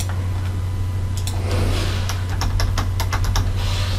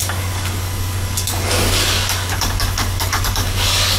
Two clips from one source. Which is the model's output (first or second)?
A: second